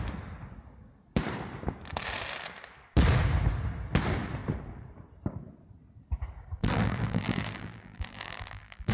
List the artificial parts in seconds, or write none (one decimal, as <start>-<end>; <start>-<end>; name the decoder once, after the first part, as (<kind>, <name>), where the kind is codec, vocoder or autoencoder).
6.6-8.9 (vocoder, BigVGAN v2)